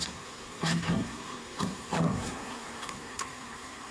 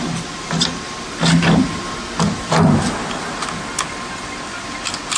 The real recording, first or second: second